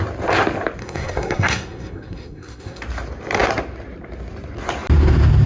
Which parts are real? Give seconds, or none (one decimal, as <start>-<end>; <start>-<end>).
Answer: 0.0-0.8; 2.8-5.5